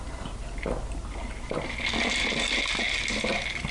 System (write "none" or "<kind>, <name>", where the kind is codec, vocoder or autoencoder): none